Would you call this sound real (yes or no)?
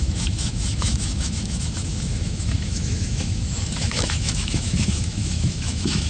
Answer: no